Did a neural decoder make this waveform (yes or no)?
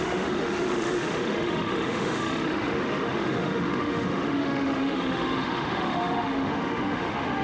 yes